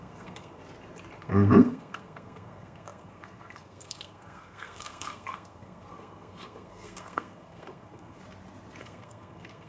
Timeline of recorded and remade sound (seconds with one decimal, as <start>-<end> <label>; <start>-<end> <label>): 0.0-0.6 remade; 0.6-1.2 recorded; 1.2-8.2 remade; 8.2-8.8 recorded; 8.8-9.7 remade